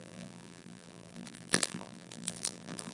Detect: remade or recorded remade